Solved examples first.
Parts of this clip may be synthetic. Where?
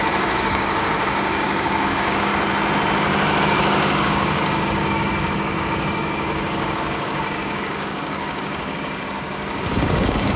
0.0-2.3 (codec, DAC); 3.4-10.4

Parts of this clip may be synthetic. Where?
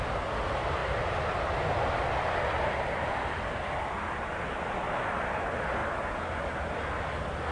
none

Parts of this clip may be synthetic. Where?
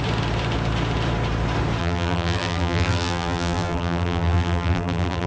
1.8-5.3 (vocoder, BigVGAN v2)